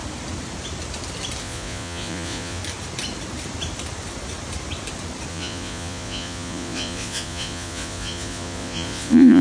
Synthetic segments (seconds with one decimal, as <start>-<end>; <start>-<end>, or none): 1.4-2.6; 5.3-9.4